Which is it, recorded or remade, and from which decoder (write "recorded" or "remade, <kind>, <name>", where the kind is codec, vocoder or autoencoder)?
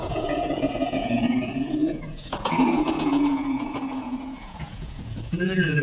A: remade, vocoder, Vocos